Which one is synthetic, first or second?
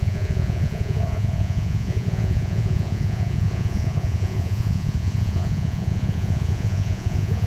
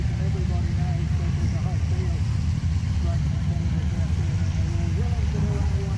first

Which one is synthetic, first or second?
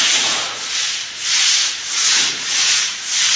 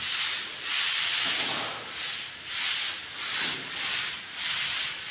first